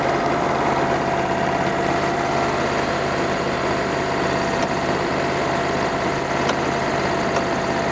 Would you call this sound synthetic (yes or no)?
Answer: no